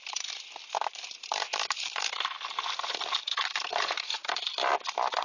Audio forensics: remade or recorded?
remade